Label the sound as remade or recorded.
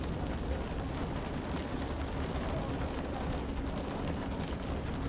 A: recorded